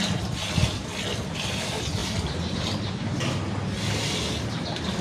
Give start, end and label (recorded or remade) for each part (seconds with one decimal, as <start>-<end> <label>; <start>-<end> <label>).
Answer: 0.0-5.0 recorded